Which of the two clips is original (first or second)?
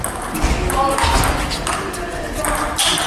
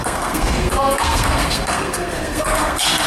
first